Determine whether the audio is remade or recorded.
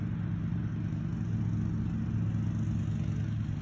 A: recorded